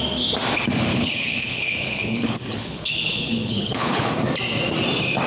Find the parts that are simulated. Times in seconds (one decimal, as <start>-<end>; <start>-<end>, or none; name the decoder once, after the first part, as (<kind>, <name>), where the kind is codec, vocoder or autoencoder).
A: 0.9-4.1 (codec, HILCodec)